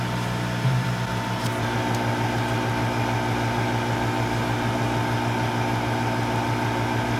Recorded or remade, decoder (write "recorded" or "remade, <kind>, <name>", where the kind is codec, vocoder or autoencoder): recorded